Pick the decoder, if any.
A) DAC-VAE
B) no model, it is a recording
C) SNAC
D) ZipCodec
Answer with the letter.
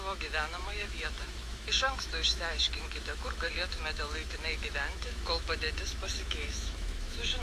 A